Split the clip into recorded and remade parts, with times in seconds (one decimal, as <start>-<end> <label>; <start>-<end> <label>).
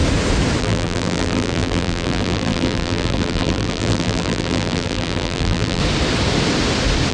0.0-0.6 recorded; 0.6-5.8 remade; 5.8-7.1 recorded